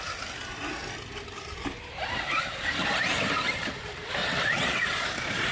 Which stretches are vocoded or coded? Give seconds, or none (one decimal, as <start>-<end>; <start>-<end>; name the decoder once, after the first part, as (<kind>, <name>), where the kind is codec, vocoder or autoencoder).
4.2-4.8 (vocoder, WaveNeXt)